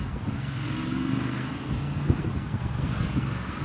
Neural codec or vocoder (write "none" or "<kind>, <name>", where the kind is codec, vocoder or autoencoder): codec, SNAC